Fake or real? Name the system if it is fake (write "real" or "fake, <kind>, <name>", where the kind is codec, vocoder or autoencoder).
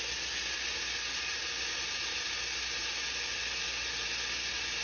real